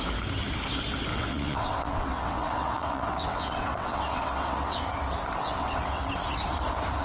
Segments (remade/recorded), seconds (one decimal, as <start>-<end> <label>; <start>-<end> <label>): 0.0-1.1 recorded; 1.1-4.8 remade; 4.8-5.4 recorded; 5.4-6.0 remade; 6.0-7.0 recorded